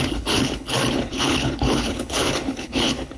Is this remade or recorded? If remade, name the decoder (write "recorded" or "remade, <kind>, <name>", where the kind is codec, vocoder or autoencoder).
remade, codec, HILCodec